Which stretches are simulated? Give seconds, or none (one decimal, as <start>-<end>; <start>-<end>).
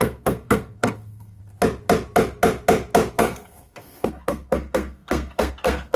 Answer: 0.0-1.4; 3.1-6.0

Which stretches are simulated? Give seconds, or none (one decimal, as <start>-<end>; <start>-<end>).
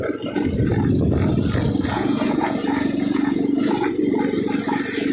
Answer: 1.9-3.7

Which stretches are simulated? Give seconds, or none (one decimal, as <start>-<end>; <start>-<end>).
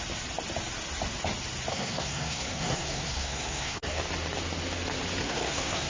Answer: 1.7-4.0; 5.2-5.9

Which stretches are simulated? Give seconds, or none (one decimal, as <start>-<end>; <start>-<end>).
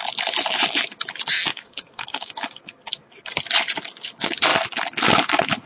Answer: 1.5-3.3